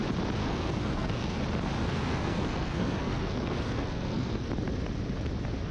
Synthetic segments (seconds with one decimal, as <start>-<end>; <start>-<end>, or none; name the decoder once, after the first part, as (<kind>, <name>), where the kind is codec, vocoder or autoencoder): 0.4-1.4 (codec, SNAC); 1.8-4.5